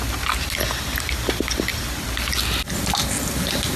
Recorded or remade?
recorded